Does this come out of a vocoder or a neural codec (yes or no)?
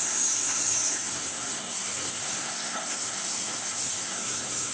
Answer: yes